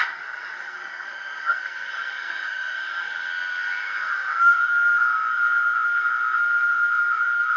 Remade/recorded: remade